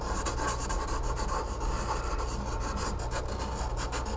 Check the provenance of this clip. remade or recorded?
recorded